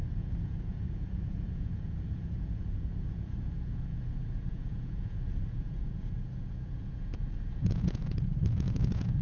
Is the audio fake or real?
fake